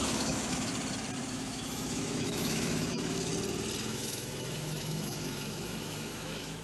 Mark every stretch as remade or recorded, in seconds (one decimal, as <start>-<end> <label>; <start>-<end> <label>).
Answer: 0.0-0.7 remade; 0.7-1.3 recorded; 1.3-3.3 remade; 3.3-3.8 recorded; 3.8-6.6 remade